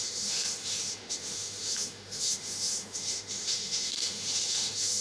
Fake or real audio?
fake